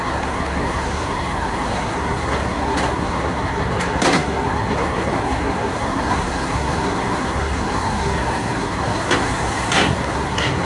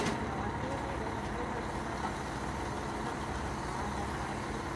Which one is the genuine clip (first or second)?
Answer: second